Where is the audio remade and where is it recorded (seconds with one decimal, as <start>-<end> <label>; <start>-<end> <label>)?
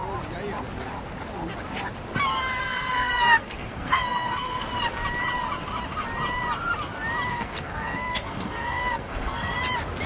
0.0-2.6 recorded; 2.6-4.7 remade; 4.7-7.3 recorded; 7.3-9.6 remade; 9.6-10.1 recorded